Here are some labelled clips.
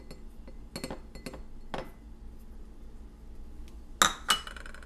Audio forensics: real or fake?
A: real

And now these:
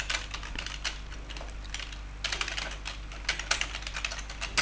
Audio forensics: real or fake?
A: real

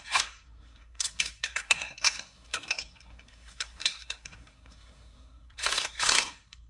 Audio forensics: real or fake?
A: fake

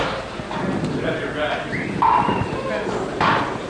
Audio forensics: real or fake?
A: real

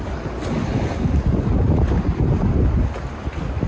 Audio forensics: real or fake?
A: real